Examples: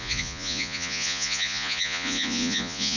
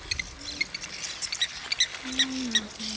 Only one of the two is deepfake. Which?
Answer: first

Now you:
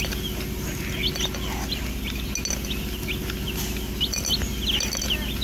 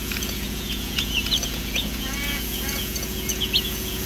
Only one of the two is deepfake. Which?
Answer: second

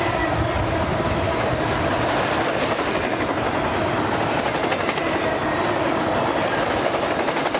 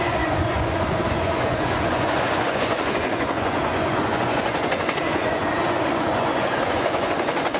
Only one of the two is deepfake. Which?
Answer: second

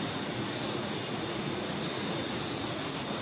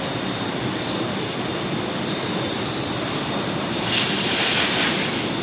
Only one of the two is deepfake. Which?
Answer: first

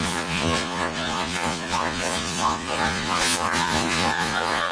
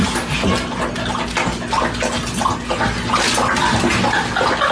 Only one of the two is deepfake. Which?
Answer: first